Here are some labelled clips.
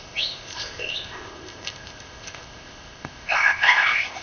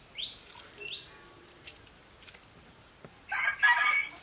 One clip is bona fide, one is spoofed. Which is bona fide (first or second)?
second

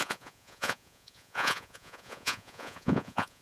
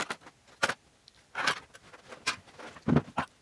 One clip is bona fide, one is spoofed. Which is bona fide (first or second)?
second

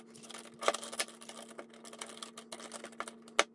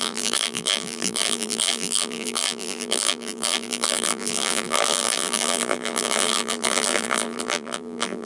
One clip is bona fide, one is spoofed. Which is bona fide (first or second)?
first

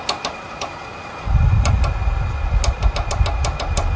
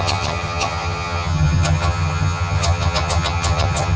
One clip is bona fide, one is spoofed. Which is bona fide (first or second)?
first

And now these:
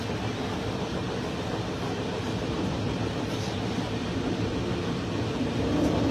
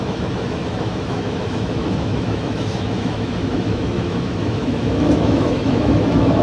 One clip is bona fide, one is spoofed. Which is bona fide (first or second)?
first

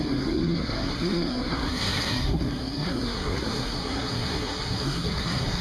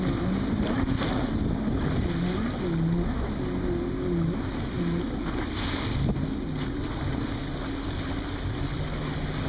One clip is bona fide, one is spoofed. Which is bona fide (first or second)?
second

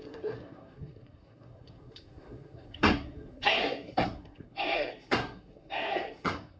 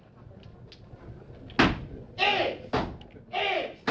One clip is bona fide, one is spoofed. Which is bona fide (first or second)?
second